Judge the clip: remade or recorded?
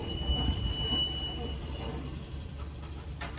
remade